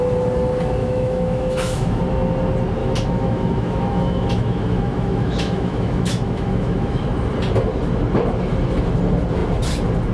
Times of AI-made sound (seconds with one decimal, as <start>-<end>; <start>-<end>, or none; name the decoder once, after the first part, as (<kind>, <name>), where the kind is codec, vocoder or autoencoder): 0.8-2.0 (autoencoder, DAC-VAE); 2.8-7.0